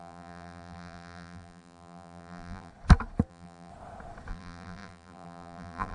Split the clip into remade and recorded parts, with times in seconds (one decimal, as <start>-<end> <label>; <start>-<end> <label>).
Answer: 0.0-2.7 remade; 2.7-3.3 recorded; 3.3-3.7 remade; 3.7-4.3 recorded; 4.3-5.9 remade

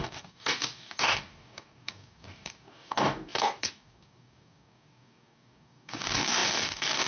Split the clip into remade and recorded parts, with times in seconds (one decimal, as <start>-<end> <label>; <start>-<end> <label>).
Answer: 0.0-7.1 remade